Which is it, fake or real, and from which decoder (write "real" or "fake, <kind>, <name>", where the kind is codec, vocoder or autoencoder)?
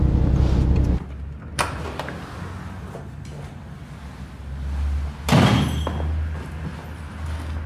real